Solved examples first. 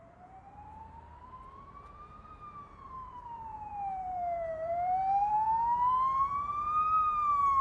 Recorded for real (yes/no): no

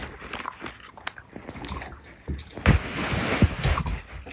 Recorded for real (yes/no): yes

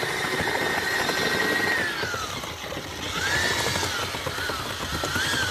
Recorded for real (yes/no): yes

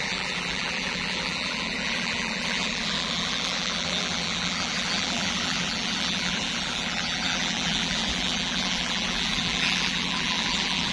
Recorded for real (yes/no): no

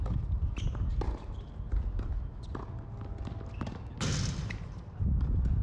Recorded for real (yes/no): yes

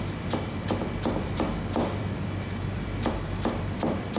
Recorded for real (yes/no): no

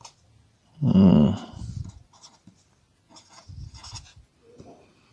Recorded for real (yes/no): yes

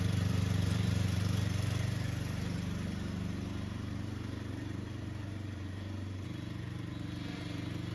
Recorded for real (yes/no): no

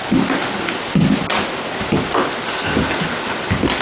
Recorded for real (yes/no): yes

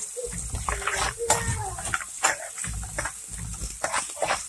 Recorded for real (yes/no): no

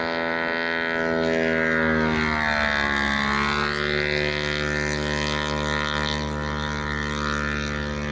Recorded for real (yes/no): yes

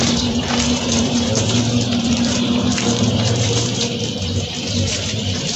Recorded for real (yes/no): no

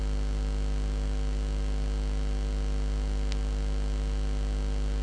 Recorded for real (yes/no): yes